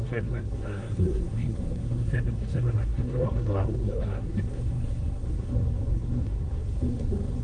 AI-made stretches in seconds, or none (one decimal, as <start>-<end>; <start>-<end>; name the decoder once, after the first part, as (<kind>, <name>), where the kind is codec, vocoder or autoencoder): 0.0-7.4 (codec, SNAC)